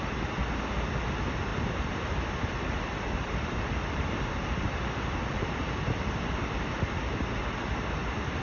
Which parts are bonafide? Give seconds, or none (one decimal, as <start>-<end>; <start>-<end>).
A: 0.0-1.5; 6.2-8.4